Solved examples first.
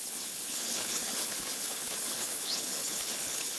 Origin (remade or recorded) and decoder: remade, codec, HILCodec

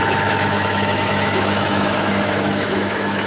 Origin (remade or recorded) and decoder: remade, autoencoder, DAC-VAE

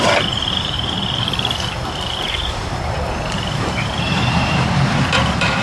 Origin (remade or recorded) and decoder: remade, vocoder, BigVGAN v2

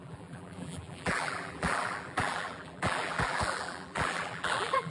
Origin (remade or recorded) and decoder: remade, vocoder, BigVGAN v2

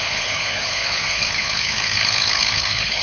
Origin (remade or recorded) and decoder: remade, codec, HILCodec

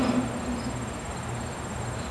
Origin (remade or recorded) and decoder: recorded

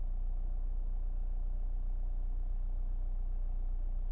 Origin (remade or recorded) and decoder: recorded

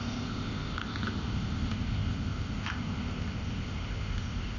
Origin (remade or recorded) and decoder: remade, codec, ZipCodec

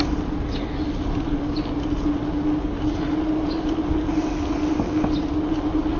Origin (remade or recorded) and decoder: recorded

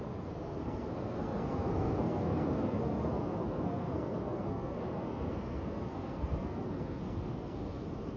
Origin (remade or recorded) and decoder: remade, codec, SNAC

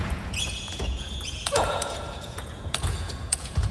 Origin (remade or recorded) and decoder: remade, vocoder, Vocos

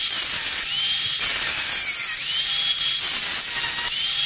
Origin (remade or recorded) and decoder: recorded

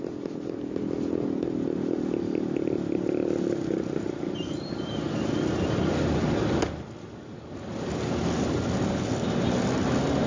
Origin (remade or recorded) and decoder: recorded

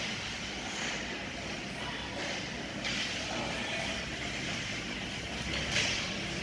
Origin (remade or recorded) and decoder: recorded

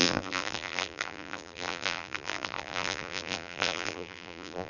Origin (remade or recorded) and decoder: remade, vocoder, BigVGAN v2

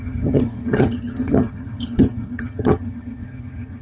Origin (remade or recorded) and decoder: remade, vocoder, HiFi-GAN